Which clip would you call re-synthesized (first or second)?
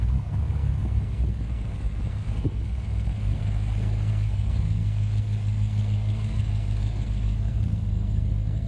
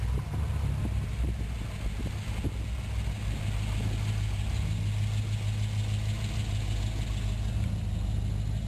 first